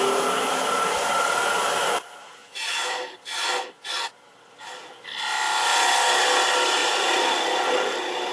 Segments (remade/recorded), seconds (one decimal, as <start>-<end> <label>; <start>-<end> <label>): 0.0-6.8 recorded; 6.8-7.4 remade; 7.4-8.3 recorded